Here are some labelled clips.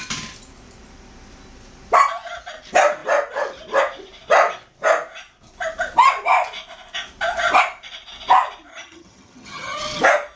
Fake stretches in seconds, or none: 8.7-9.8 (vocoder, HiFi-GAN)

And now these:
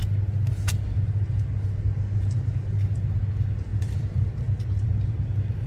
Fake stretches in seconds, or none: 3.7-5.2 (vocoder, BigVGAN v2)

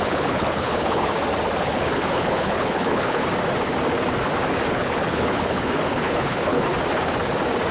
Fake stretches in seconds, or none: 0.0-1.1 (codec, HILCodec); 1.6-3.2; 4.7-6.7

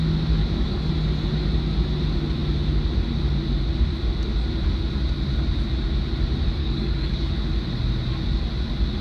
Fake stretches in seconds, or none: 0.4-0.9 (codec, DAC); 6.6-7.3

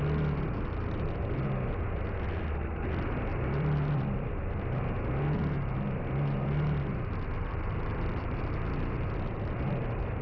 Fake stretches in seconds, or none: 3.3-4.3 (vocoder, BigVGAN v2); 7.4-8.3

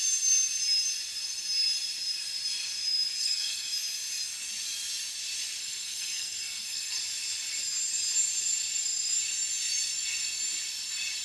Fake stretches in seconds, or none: 3.2-3.7 (codec, SNAC); 5.6-7.0

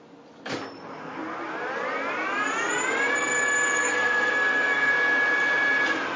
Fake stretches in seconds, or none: 3.8-4.9 (codec, SNAC)

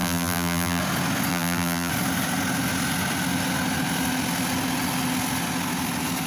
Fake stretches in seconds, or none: 0.0-0.8 (vocoder, BigVGAN v2); 1.3-1.9